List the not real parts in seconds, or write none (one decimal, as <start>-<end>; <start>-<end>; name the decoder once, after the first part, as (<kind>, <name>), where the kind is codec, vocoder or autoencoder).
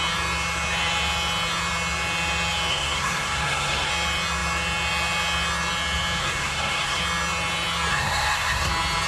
2.7-3.9 (codec, SNAC); 6.2-7.0; 7.9-8.7